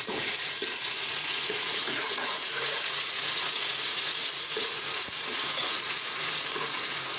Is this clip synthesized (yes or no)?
yes